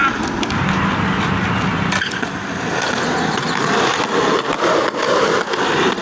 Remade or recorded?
recorded